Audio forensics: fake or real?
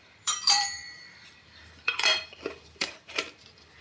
fake